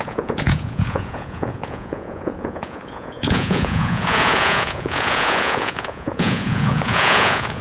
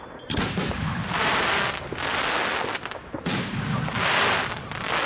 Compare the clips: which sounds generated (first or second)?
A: first